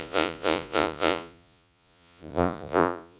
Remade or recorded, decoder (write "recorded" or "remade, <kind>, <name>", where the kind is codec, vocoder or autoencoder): remade, vocoder, Vocos